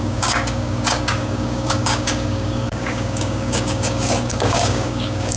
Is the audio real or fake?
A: fake